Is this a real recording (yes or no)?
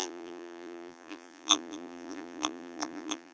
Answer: no